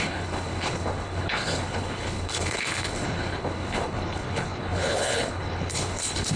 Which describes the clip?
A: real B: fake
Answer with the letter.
B